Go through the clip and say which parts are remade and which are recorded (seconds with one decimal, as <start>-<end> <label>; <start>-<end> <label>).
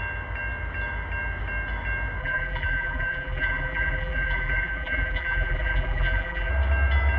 0.0-2.2 recorded; 2.2-6.5 remade; 6.5-7.2 recorded